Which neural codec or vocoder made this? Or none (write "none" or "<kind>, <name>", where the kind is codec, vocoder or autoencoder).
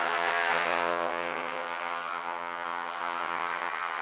vocoder, HiFi-GAN